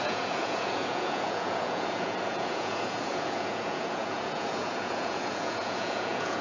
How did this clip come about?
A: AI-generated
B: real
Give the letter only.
A